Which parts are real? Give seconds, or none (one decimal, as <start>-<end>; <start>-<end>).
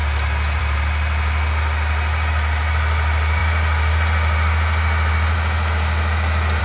0.0-6.6